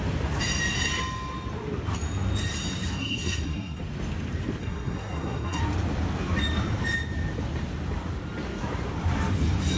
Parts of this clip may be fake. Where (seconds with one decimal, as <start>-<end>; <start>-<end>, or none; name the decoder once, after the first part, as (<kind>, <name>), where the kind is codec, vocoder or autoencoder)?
3.0-3.8 (codec, SNAC); 4.6-5.6